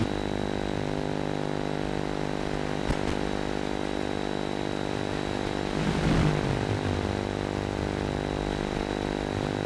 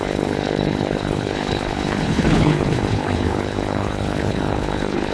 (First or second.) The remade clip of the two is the second